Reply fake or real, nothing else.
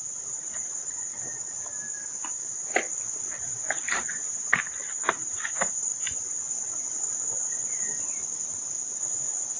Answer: real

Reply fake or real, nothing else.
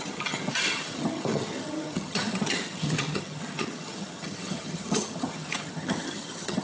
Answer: fake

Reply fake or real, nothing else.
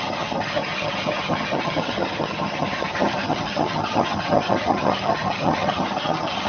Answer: fake